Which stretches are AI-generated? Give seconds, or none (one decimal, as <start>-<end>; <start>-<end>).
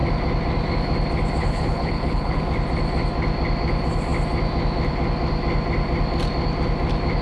1.4-2.4